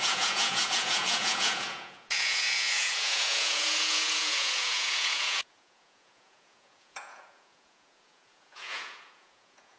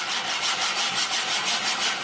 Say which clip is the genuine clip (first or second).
second